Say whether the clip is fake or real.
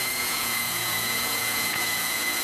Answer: fake